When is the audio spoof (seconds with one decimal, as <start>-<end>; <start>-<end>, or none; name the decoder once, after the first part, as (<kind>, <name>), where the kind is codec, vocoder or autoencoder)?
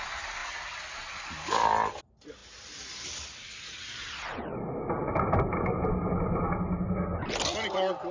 none